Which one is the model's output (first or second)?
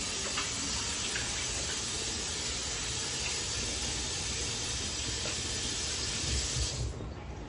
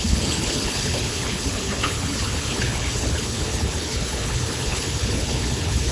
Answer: second